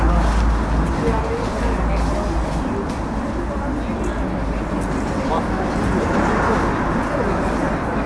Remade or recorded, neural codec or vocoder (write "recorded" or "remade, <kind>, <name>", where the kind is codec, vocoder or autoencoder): recorded